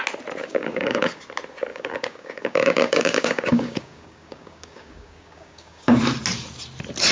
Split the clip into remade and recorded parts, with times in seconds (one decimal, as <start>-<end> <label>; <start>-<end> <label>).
0.0-0.4 recorded; 0.4-1.2 remade; 1.2-1.7 recorded; 1.7-6.0 remade; 6.0-7.1 recorded